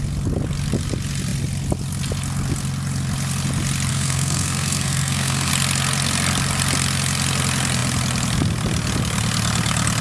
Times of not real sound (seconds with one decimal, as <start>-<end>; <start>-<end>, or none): 3.9-5.5